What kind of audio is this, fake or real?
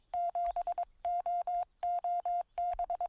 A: fake